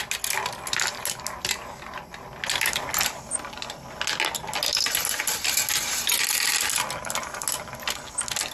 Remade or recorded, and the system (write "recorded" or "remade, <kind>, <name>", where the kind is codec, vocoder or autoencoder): recorded